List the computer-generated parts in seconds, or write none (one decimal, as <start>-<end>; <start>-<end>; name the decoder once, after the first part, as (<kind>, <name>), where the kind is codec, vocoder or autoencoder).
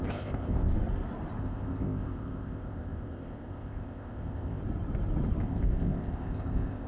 0.0-0.7 (codec, ZipCodec); 1.4-4.6; 5.4-6.9